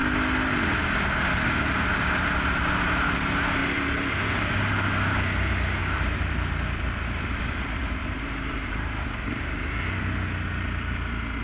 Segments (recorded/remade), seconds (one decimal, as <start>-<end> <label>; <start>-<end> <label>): 0.0-5.8 recorded; 5.8-7.6 remade; 7.6-8.0 recorded; 8.0-8.7 remade; 8.7-11.4 recorded

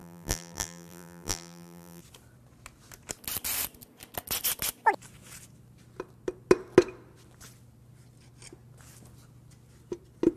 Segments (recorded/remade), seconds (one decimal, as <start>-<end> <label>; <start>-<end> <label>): 0.0-2.0 remade; 2.0-10.4 recorded

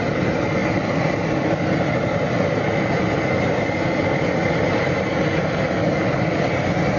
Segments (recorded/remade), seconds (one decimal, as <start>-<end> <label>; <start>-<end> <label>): 0.0-7.0 recorded

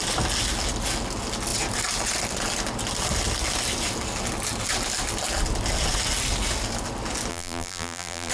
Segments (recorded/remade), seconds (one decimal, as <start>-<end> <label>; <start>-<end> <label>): 0.0-7.3 recorded; 7.3-8.3 remade